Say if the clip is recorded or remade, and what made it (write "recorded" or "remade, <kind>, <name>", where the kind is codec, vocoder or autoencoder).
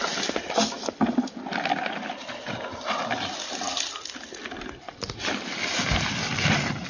recorded